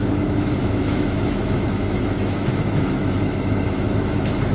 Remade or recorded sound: remade